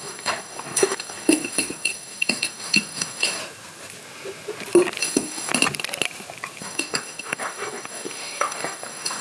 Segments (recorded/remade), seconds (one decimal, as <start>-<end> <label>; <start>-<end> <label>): 0.0-3.4 remade; 3.4-5.0 recorded; 5.0-5.5 remade; 5.5-6.6 recorded; 6.6-9.2 remade